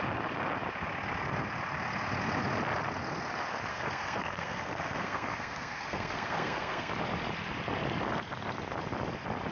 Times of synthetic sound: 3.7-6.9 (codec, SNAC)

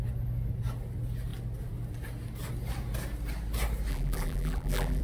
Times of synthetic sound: 3.9-5.0 (vocoder, BigVGAN v2)

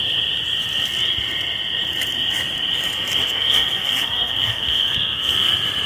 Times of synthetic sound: 3.2-5.5 (codec, SNAC)

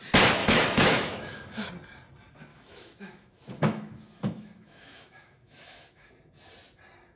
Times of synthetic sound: 0.4-1.7 (autoencoder, DAC-VAE); 2.5-6.1

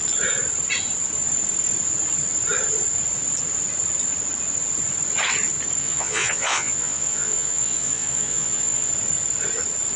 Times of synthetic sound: 5.8-8.9 (vocoder, Vocos)

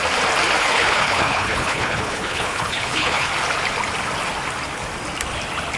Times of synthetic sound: 0.6-3.3 (codec, HILCodec)